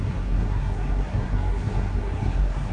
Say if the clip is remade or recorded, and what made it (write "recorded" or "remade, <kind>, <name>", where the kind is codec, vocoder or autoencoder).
remade, codec, SNAC